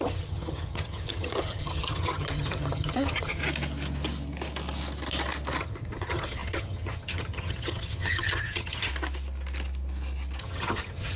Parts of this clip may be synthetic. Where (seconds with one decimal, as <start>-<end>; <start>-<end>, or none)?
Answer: 0.0-3.4; 5.6-8.9; 10.4-11.2